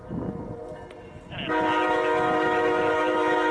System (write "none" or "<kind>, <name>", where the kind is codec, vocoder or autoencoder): none